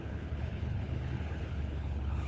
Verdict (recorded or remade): remade